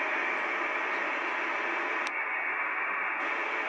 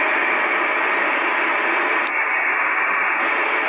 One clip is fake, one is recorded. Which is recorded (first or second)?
first